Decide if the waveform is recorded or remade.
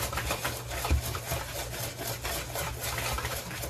recorded